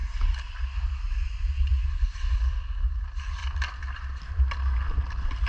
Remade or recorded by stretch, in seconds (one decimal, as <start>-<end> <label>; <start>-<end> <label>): 0.0-5.5 recorded